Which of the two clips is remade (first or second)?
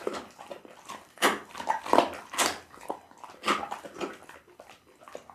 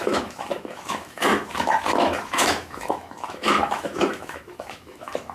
second